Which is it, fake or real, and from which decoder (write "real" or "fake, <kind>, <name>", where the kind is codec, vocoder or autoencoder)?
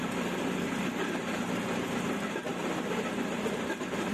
real